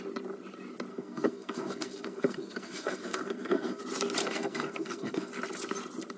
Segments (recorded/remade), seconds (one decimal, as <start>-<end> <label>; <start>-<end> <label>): 0.0-0.9 recorded; 0.9-3.8 remade; 3.8-4.2 recorded; 4.2-5.3 remade; 5.3-6.2 recorded

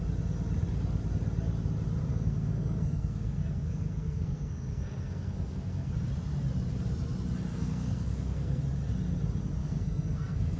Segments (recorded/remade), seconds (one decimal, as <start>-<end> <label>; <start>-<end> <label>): 0.0-2.1 recorded; 2.1-5.9 remade; 5.9-7.5 recorded; 7.5-8.6 remade; 8.6-9.6 recorded; 9.6-10.6 remade

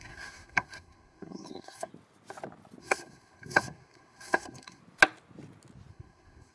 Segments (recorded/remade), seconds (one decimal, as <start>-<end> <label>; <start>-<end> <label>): 0.0-1.9 remade; 1.9-2.8 recorded; 2.8-4.8 remade; 4.8-5.9 recorded; 5.9-6.5 remade

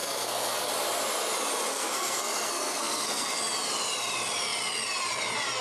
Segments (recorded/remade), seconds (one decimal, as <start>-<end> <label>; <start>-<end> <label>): 0.0-0.7 remade; 0.7-1.7 recorded; 1.7-3.4 remade; 3.4-5.6 recorded

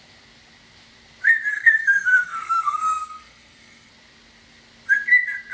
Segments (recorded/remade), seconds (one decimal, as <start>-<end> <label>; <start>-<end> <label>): 0.0-1.5 recorded; 1.5-3.9 remade; 3.9-5.5 recorded

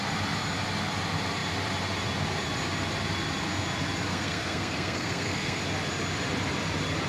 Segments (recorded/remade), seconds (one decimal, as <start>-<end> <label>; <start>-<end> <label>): 0.0-4.1 recorded; 4.1-5.6 remade; 5.6-7.1 recorded

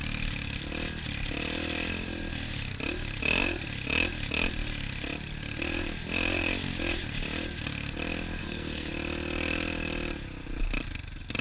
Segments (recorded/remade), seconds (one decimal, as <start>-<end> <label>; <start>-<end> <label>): 0.0-8.4 recorded; 8.4-8.9 remade; 8.9-11.4 recorded

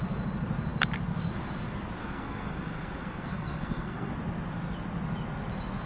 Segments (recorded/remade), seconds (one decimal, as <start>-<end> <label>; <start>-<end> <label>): 0.0-2.0 recorded; 2.0-4.1 remade; 4.1-5.9 recorded